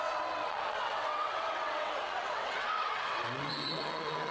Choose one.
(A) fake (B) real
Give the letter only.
A